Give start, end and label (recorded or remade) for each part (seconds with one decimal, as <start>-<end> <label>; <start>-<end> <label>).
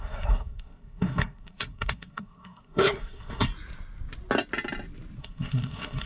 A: 0.0-3.5 remade; 3.5-5.2 recorded; 5.2-6.1 remade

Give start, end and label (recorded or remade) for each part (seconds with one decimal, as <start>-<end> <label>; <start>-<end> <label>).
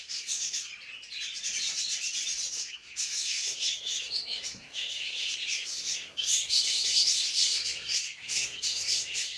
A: 0.0-0.7 remade; 0.7-2.5 recorded; 2.5-9.4 remade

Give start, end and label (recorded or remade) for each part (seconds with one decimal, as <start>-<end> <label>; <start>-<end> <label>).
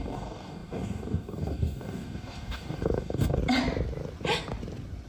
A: 0.0-3.4 remade; 3.4-5.1 recorded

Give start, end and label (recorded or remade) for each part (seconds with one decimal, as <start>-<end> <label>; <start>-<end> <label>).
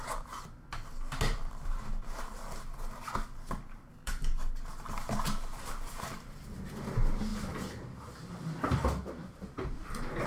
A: 0.0-3.9 recorded; 3.9-4.5 remade; 4.5-10.3 recorded